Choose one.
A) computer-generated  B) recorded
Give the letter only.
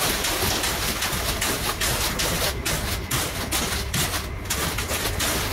B